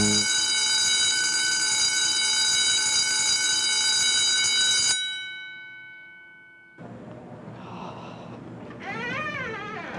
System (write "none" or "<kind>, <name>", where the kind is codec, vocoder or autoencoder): none